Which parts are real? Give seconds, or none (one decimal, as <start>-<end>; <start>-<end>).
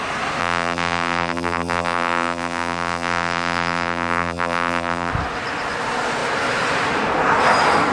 0.0-0.4; 5.1-7.9